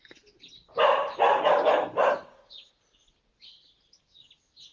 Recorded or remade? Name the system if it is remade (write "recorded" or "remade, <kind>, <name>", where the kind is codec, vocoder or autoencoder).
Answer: recorded